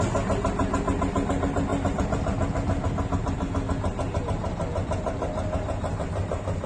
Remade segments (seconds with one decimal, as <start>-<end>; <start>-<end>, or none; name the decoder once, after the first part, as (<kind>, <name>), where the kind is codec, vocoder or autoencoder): none